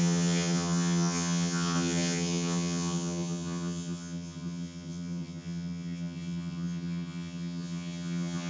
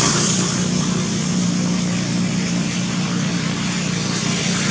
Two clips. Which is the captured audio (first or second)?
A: second